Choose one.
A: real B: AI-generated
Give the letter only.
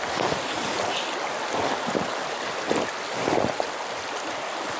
A